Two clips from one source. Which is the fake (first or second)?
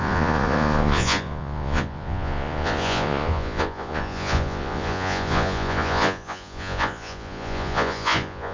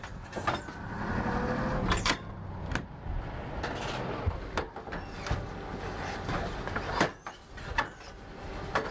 first